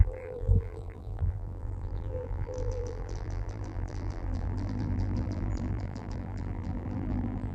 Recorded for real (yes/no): no